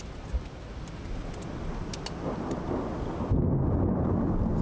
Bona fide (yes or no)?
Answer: yes